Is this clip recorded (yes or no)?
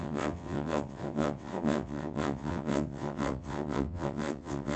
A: no